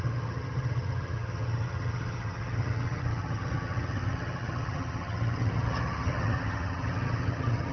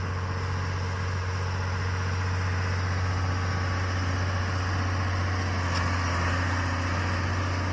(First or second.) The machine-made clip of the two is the first